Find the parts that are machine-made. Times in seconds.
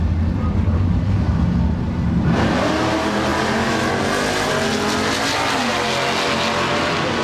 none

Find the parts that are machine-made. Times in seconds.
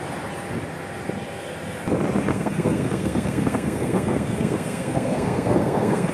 2.3-6.1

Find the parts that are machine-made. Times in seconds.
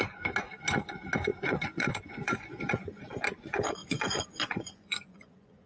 1.3-3.0; 3.8-5.7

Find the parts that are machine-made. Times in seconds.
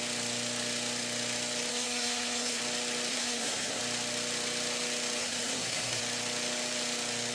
1.7-2.6; 3.1-3.8; 5.2-6.0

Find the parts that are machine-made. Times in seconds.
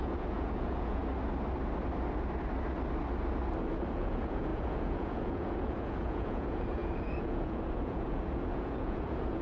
0.0-1.0; 3.6-9.4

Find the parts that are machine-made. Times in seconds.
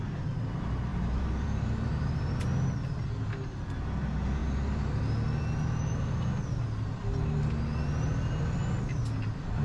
0.9-2.4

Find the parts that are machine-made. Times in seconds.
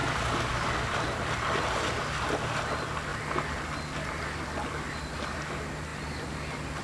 none